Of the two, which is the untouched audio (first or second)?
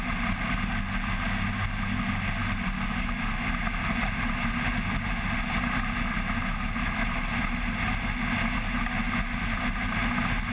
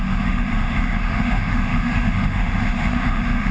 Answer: first